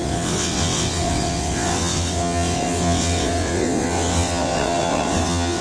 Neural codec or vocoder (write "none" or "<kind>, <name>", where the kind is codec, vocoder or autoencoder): vocoder, WaveNeXt